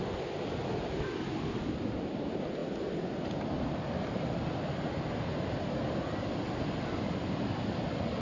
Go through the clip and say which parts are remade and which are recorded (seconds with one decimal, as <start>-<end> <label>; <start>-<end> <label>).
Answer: 0.0-8.2 recorded